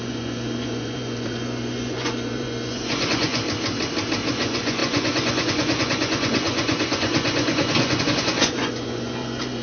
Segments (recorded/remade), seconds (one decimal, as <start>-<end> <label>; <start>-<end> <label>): 0.0-3.4 remade; 3.4-4.3 recorded; 4.3-9.6 remade